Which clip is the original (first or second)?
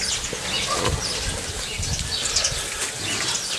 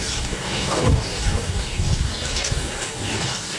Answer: first